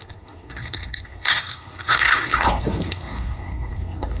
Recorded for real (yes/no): no